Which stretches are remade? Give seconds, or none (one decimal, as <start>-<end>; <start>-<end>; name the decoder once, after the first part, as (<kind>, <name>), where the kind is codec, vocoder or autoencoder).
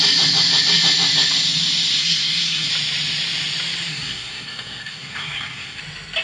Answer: 2.0-2.7 (codec, SNAC); 3.9-5.8